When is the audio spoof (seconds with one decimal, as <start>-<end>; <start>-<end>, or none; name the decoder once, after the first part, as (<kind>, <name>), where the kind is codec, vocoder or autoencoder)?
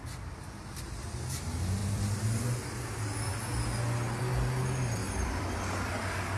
1.8-2.4 (vocoder, BigVGAN v2); 5.0-5.9